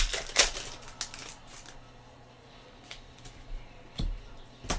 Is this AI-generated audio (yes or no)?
no